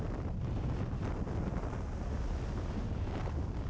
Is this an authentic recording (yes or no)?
yes